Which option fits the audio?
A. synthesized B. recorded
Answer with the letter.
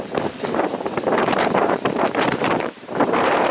A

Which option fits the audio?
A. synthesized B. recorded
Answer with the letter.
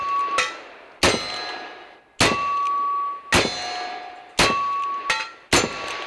B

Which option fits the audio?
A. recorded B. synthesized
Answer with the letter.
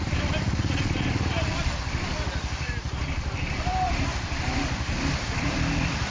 B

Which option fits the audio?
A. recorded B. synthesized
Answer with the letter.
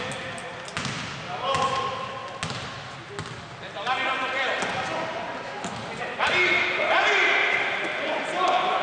A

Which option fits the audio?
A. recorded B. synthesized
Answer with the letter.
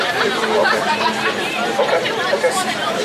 B